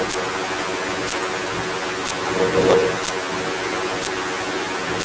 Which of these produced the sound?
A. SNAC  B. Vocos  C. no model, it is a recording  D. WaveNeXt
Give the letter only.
C